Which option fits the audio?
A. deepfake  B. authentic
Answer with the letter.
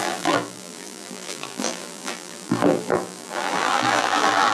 A